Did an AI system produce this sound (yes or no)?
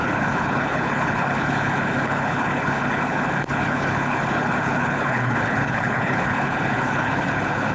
yes